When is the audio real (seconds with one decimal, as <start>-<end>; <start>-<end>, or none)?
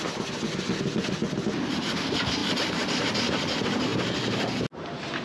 0.0-5.2